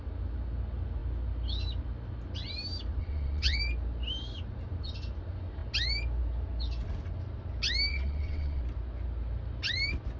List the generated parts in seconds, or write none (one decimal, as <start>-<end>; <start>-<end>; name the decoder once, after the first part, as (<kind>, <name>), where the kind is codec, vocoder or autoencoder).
3.0-3.6 (vocoder, WaveNeXt); 7.9-8.6